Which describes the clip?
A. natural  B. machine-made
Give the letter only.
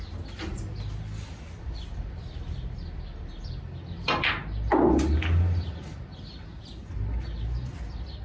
A